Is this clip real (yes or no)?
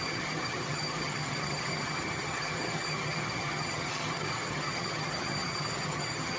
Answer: no